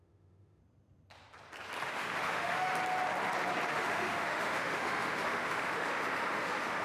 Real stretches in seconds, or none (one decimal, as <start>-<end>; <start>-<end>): 0.6-1.9; 2.7-3.7